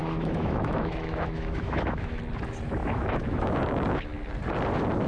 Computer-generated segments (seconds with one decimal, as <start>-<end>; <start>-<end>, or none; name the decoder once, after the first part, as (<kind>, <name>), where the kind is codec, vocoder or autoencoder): 0.0-2.2 (autoencoder, DAC-VAE); 2.8-3.6